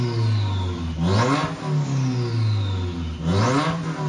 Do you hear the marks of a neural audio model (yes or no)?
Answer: no